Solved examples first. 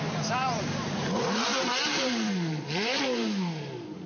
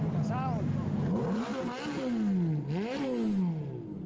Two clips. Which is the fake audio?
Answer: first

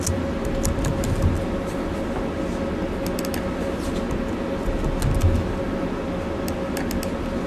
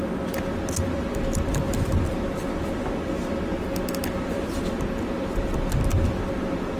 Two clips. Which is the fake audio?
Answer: second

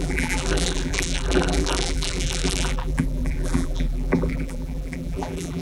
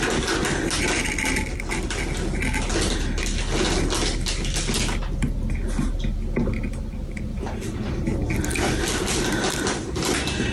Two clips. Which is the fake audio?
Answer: first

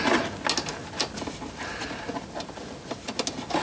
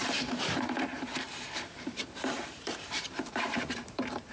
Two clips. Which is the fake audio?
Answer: second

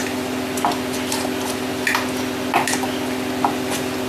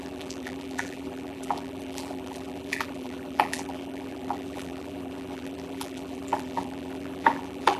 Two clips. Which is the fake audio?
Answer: second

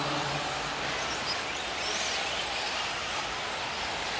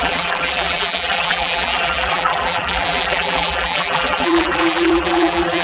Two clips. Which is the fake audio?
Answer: second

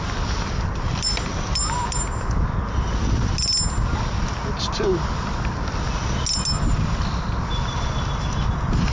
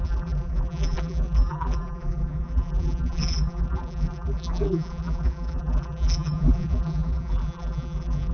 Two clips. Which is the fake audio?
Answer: second